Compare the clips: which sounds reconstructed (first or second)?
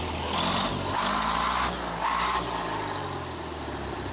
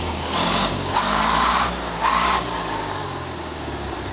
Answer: second